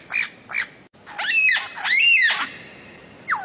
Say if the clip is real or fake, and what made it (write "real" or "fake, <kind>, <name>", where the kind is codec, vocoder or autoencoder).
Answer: real